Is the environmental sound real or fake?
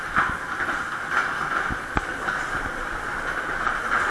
real